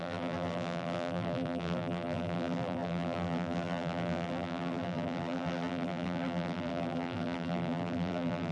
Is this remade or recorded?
remade